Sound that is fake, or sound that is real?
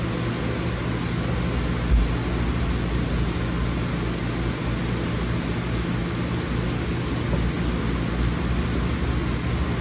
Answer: real